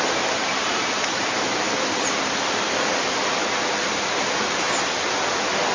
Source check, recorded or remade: recorded